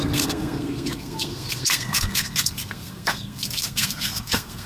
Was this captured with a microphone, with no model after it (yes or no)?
no